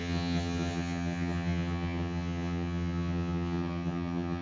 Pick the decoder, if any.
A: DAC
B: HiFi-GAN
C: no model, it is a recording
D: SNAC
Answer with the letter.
B